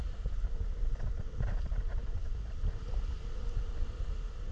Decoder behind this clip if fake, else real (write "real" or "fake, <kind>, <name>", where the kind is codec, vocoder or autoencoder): real